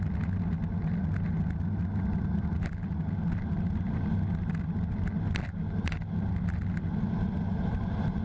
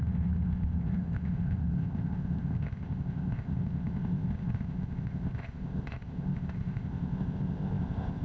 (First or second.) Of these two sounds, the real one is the first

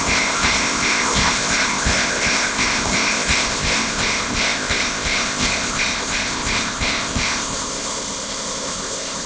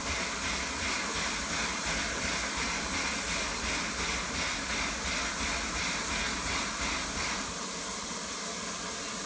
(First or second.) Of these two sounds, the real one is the second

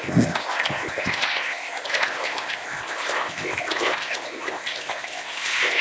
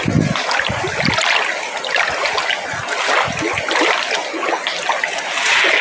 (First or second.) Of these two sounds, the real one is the second